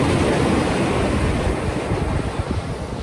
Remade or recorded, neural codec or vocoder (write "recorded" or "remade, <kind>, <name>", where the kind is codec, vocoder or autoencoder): recorded